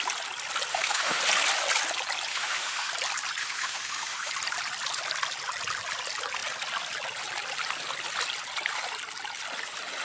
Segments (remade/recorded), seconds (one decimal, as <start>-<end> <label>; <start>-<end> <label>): 0.0-0.7 recorded; 0.7-1.2 remade; 1.2-2.3 recorded; 2.3-2.9 remade; 2.9-3.4 recorded; 3.4-4.3 remade; 4.3-10.0 recorded